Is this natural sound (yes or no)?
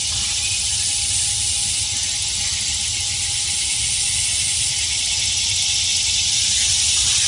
yes